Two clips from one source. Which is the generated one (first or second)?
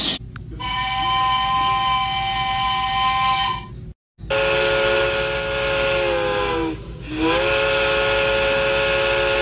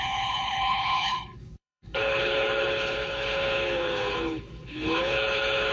second